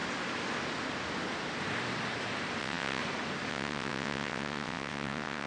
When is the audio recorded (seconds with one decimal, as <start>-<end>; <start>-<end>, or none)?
0.0-2.6; 3.0-3.5